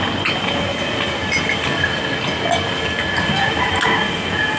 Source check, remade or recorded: recorded